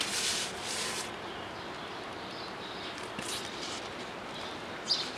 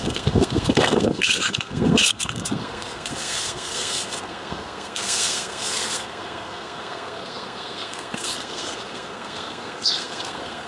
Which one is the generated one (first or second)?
second